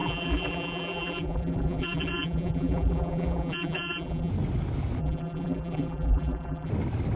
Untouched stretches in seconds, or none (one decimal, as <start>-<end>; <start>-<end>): 4.3-5.0; 6.7-7.2